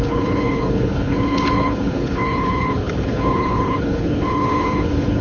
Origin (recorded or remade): remade